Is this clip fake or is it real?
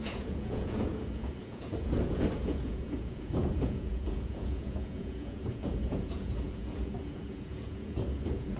fake